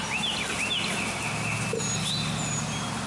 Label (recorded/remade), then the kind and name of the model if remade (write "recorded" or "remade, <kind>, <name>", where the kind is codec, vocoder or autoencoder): recorded